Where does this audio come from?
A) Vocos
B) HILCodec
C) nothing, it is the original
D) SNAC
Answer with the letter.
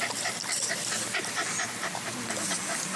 C